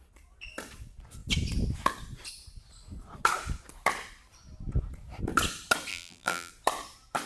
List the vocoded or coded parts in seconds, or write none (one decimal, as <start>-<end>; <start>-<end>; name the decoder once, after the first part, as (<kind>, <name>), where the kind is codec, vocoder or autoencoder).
5.9-6.5 (vocoder, BigVGAN v2)